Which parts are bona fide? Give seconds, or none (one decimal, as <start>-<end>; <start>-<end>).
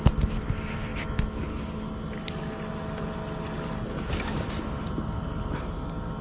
0.0-6.2